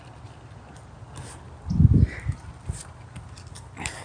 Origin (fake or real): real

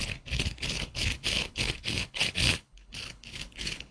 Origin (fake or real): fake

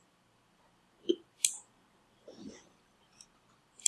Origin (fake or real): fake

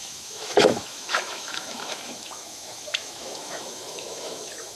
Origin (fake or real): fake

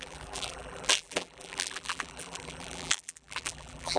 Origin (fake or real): fake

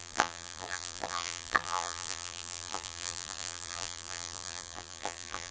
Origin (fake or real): fake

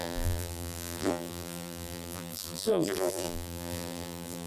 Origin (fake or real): fake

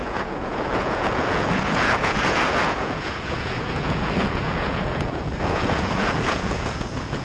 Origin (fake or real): fake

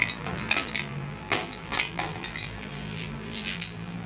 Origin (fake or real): fake